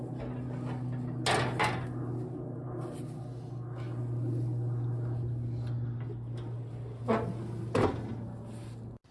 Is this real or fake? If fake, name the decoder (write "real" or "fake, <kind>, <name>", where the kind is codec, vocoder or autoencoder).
real